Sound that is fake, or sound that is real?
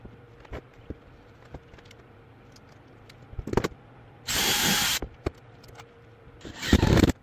real